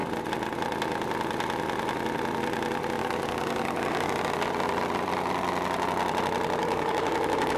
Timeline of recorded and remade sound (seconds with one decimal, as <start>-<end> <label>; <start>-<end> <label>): 0.0-3.0 recorded; 3.0-4.1 remade; 4.1-6.6 recorded; 6.6-7.6 remade